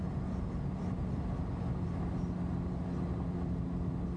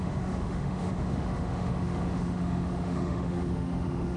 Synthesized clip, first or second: second